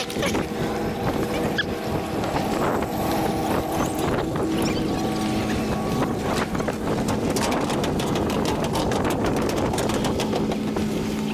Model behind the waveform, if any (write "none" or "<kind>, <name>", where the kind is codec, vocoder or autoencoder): none